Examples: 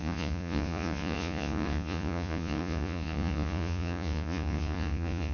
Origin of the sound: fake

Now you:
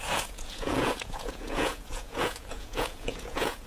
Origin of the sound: fake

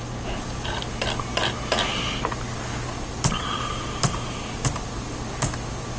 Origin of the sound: real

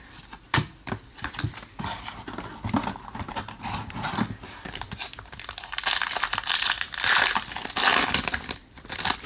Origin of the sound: real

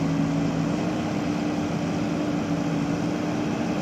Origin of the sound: real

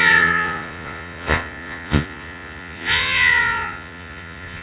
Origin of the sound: fake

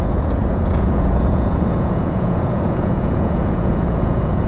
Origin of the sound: fake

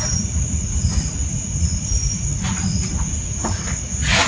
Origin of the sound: fake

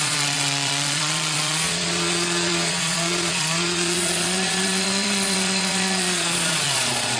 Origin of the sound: fake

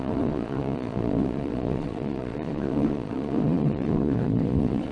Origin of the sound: fake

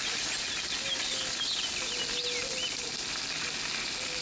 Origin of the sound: real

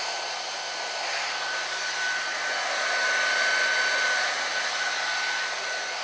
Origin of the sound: real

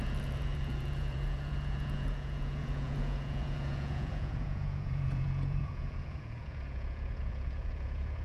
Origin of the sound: fake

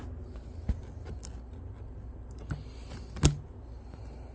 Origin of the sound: real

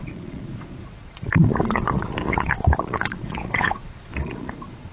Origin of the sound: fake